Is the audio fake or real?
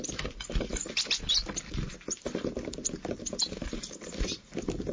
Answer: fake